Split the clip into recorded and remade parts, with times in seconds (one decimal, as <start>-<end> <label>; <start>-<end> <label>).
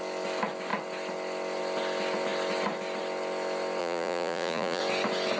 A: 0.0-3.8 recorded; 3.8-4.8 remade; 4.8-5.4 recorded